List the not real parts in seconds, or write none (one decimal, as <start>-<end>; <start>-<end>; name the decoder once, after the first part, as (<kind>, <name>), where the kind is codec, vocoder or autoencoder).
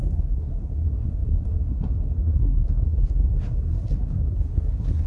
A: 0.0-5.1 (codec, SNAC)